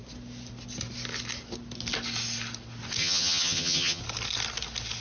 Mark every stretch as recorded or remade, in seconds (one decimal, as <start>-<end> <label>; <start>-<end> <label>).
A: 0.0-3.0 recorded; 3.0-4.0 remade; 4.0-5.0 recorded